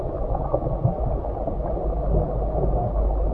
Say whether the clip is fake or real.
real